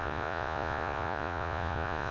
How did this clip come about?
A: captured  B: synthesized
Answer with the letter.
B